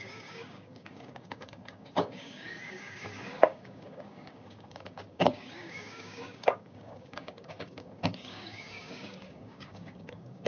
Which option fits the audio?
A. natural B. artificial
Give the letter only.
B